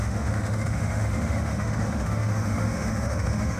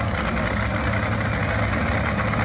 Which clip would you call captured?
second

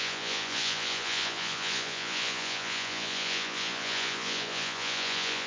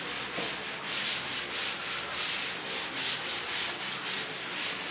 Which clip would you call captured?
second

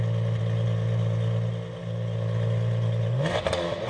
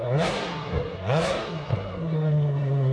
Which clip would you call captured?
first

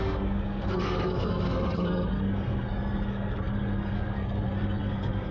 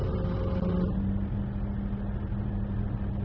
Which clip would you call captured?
second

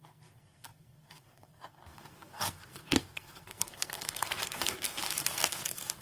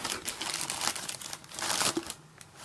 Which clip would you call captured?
second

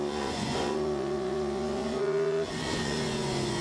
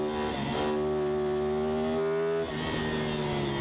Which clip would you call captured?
second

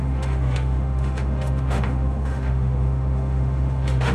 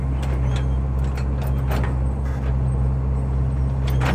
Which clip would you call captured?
second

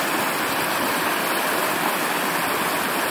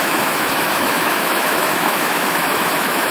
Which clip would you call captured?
first